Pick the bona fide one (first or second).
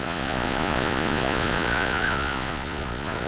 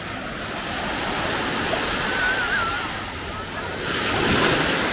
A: second